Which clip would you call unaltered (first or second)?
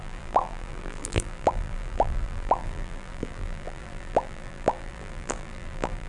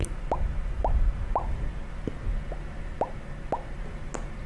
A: second